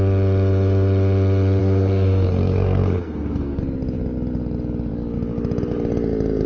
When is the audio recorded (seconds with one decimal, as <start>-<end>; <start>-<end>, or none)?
0.0-1.6; 3.6-6.5